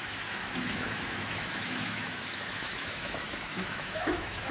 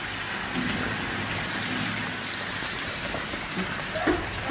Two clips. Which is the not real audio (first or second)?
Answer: first